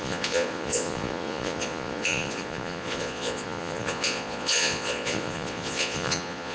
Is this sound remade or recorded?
remade